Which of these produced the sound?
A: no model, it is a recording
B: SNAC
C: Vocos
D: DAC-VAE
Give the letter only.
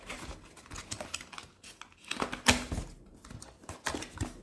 A